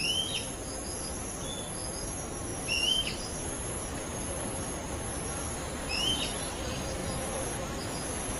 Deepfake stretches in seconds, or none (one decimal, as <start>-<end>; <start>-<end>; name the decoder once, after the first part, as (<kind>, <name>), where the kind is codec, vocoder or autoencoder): 2.5-5.0 (vocoder, BigVGAN v2); 5.8-6.5